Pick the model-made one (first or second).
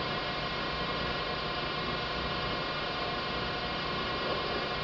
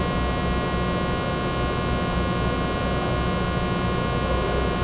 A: first